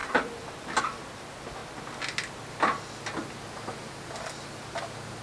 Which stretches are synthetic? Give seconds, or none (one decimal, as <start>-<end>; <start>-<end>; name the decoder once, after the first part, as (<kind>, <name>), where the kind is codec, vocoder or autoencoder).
0.0-0.8 (vocoder, BigVGAN v2)